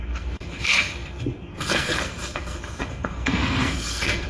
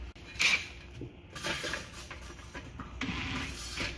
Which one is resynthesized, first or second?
first